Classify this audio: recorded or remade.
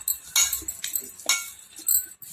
recorded